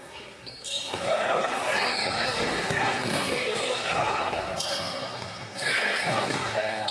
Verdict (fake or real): fake